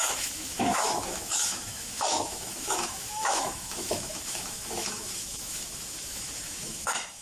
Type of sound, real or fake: fake